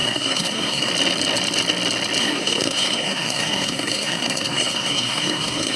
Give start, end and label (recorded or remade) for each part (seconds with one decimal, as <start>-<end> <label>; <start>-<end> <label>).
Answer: 0.0-0.9 remade; 0.9-2.2 recorded; 2.2-5.8 remade